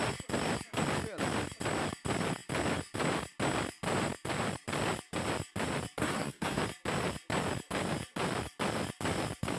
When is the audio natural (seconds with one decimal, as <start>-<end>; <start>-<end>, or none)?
0.0-6.0; 6.6-9.6